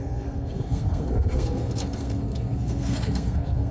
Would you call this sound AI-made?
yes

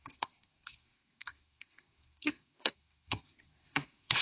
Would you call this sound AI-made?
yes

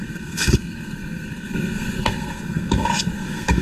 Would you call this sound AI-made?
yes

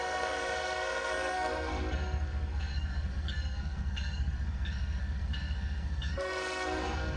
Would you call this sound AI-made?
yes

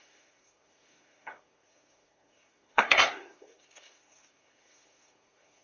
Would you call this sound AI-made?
yes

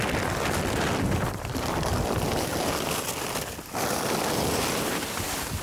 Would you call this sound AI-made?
no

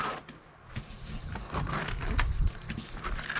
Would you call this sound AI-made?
no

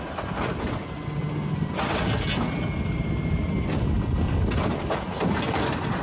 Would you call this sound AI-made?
no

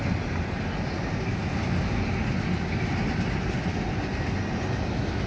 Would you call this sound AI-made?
no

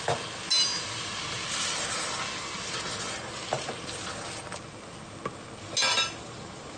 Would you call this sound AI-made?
no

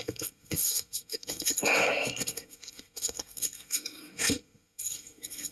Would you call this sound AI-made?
yes